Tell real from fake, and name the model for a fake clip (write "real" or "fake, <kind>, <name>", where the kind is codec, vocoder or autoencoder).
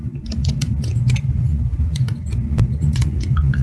fake, vocoder, Vocos